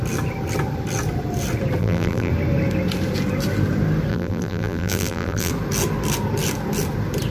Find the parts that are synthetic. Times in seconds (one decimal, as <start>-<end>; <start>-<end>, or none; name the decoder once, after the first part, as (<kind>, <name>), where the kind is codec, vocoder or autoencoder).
1.8-2.3 (vocoder, BigVGAN v2); 4.1-5.5